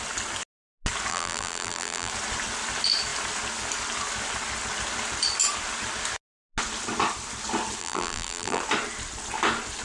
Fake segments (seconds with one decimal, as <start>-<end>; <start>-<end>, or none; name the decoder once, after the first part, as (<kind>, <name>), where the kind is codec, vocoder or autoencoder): 1.1-2.1 (vocoder, BigVGAN v2); 7.8-8.6